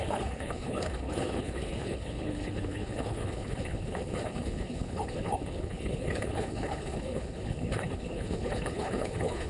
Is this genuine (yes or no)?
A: no